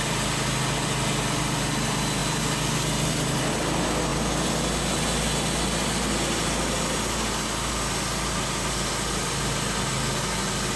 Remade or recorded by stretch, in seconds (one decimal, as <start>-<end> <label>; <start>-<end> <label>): 0.0-10.8 recorded